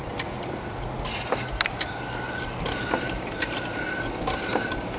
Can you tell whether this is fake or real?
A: real